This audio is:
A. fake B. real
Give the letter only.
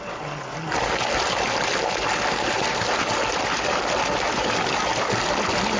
B